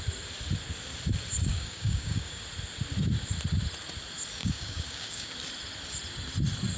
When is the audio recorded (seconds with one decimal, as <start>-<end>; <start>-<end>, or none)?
0.0-1.5; 2.4-4.4; 5.3-6.8